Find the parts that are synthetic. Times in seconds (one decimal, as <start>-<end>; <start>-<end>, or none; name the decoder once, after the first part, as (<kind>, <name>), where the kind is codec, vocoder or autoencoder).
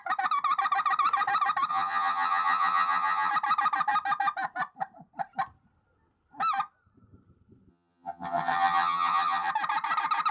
1.7-3.3 (vocoder, HiFi-GAN); 7.7-9.5